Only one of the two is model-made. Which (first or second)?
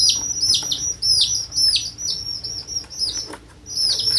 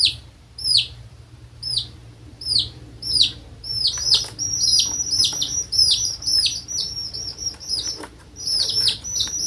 second